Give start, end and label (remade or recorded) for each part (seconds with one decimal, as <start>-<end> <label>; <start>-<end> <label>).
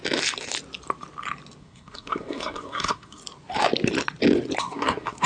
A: 0.0-1.6 recorded; 1.6-3.2 remade; 3.2-4.6 recorded; 4.6-5.3 remade